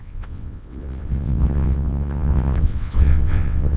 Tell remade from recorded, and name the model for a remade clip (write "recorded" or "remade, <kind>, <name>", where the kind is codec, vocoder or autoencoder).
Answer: remade, vocoder, WaveNeXt